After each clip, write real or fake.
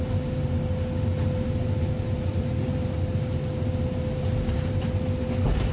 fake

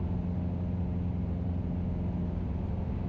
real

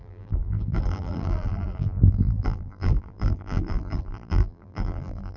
fake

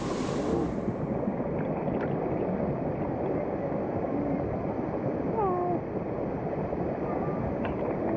real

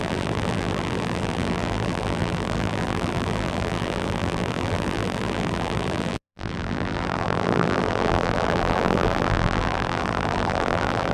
fake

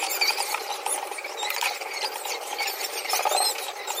fake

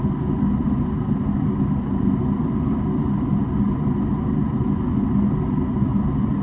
real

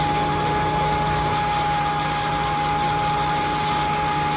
real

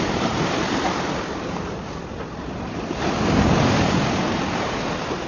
fake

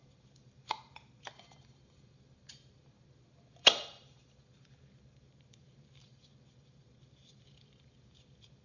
fake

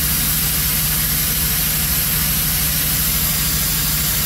real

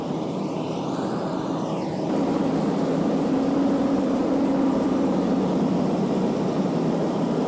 fake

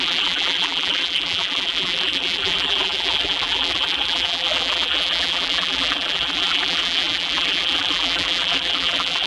fake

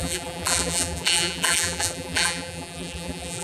fake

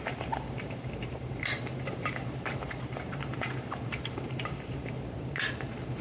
fake